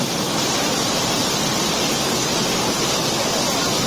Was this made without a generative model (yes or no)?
yes